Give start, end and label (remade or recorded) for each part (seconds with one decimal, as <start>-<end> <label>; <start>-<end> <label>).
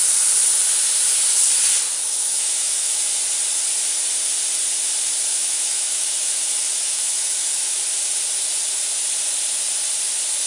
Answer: 0.0-1.9 recorded; 1.9-3.0 remade; 3.0-5.3 recorded; 5.3-7.8 remade; 7.8-10.5 recorded